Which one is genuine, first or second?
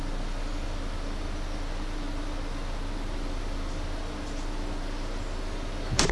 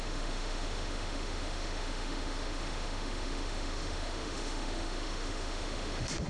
first